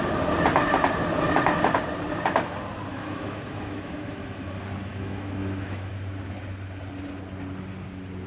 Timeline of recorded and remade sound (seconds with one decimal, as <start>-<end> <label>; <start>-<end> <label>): 0.0-2.9 recorded; 2.9-4.5 remade; 4.5-4.9 recorded; 4.9-5.9 remade; 5.9-8.3 recorded